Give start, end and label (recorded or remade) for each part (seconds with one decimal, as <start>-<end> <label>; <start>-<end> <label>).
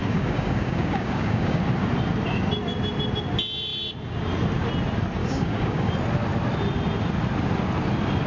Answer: 0.0-1.6 remade; 1.6-5.2 recorded; 5.2-5.9 remade; 5.9-8.3 recorded